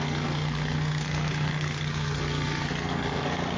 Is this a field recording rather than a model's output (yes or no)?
no